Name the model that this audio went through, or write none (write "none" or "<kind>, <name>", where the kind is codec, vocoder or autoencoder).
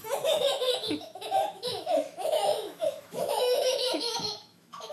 autoencoder, DAC-VAE